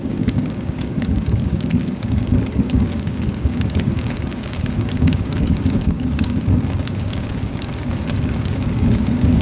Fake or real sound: fake